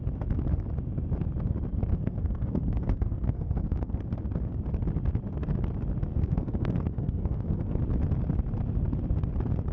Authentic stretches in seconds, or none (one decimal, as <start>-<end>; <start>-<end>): 0.0-1.9; 4.0-6.1; 7.8-9.7